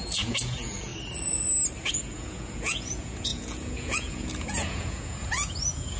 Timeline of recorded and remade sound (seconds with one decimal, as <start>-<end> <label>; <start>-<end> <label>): 0.0-0.9 remade; 0.9-1.9 recorded; 1.9-6.0 remade